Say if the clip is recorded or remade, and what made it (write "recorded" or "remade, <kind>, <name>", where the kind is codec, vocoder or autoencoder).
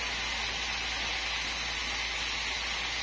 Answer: recorded